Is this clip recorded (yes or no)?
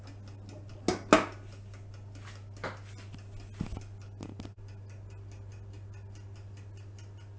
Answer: yes